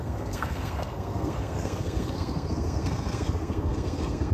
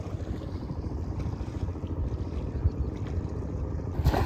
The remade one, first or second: first